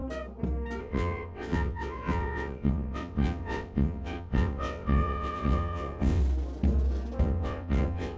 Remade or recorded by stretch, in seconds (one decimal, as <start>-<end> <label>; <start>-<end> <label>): 0.0-0.8 recorded; 0.8-6.2 remade; 6.2-7.2 recorded; 7.2-8.2 remade